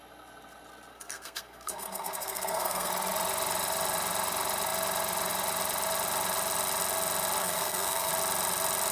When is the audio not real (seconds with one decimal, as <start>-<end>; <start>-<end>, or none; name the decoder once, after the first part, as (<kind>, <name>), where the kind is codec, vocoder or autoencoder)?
0.9-2.9 (codec, SNAC); 7.4-8.1